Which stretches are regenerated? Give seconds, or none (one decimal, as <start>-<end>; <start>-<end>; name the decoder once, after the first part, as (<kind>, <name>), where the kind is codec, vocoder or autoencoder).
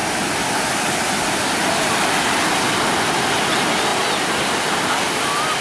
none